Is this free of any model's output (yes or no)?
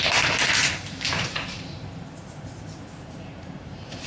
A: no